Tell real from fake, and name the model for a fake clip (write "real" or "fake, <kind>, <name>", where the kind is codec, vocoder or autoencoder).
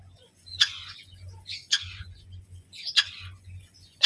fake, vocoder, Vocos